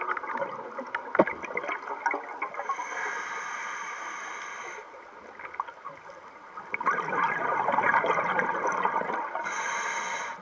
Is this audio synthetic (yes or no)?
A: no